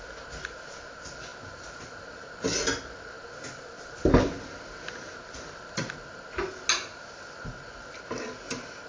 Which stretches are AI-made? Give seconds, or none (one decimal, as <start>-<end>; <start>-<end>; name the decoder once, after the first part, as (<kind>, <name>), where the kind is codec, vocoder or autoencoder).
none

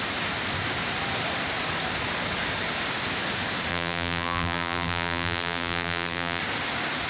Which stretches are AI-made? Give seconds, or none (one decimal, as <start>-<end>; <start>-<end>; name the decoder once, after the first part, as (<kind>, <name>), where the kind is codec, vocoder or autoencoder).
3.7-6.4 (vocoder, BigVGAN v2)

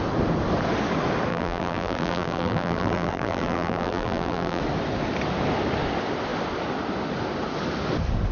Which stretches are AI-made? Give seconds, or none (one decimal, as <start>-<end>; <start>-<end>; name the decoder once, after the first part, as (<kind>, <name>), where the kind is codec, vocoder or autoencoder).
1.3-4.6 (vocoder, BigVGAN v2)

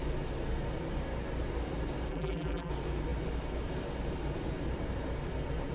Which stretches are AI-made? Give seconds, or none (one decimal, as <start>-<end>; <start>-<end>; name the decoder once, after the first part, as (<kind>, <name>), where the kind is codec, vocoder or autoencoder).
2.1-2.7 (vocoder, BigVGAN v2)

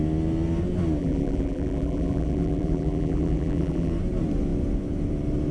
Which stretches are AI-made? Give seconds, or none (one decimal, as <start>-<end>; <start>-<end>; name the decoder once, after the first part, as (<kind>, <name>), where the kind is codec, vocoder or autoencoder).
1.0-3.9 (vocoder, BigVGAN v2)